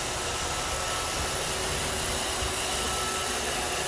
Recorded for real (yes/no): yes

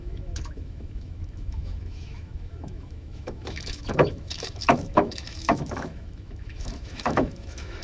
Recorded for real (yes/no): no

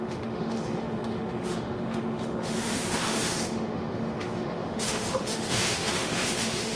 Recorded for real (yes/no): no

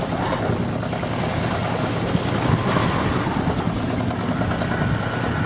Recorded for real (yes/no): yes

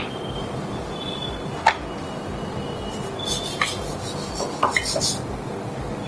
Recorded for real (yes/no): yes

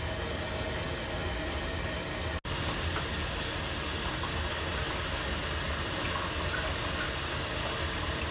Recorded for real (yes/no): yes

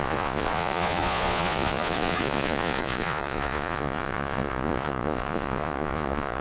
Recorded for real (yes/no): no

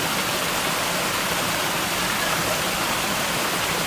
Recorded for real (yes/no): yes